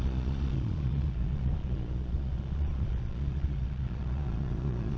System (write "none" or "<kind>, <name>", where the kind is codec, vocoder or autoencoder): vocoder, Vocos